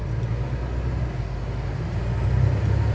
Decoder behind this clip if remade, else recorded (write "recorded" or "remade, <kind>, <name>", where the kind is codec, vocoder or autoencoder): recorded